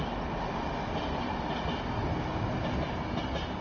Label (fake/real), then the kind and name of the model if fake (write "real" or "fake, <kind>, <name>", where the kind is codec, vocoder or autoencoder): real